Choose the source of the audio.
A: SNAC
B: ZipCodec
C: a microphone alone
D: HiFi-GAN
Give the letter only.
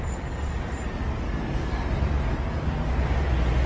C